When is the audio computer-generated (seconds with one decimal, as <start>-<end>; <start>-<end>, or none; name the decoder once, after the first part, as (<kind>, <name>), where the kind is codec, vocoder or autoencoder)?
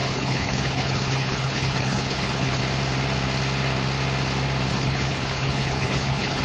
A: 0.0-2.6 (codec, HILCodec); 4.7-6.4